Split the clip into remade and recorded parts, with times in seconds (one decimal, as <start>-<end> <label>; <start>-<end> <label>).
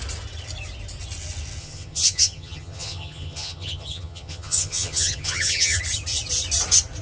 0.0-1.6 recorded; 1.6-5.8 remade; 5.8-7.0 recorded